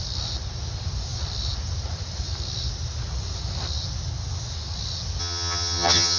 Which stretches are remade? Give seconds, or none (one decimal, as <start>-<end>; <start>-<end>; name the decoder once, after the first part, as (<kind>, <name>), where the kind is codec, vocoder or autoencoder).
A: 5.2-6.2 (vocoder, HiFi-GAN)